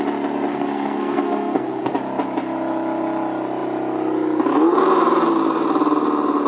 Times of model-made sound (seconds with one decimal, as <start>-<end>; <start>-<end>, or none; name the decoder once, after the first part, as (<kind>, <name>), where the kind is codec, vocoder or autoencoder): 0.5-1.9 (codec, SNAC)